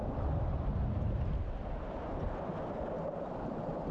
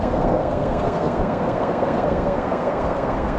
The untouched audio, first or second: first